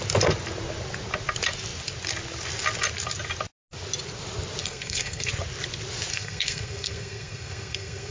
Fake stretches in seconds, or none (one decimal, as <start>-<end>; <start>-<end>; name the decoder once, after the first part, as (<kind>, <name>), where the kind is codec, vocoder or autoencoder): 4.6-5.3 (codec, SNAC); 6.1-8.1